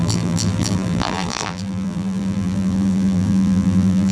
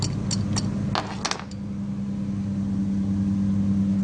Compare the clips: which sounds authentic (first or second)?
second